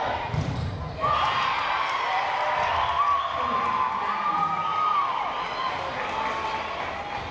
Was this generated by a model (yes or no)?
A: no